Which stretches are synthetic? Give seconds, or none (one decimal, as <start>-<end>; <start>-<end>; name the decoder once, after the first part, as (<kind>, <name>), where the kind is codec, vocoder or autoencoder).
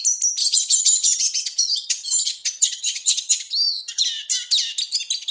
0.4-3.3 (vocoder, HiFi-GAN)